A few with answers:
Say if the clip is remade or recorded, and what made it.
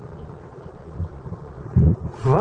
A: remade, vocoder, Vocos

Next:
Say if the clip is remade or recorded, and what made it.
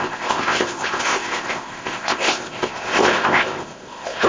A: remade, codec, ZipCodec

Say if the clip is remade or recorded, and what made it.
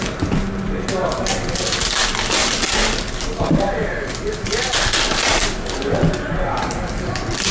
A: recorded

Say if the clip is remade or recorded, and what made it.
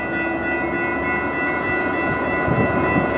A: recorded